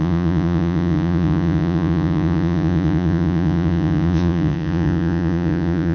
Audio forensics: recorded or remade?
remade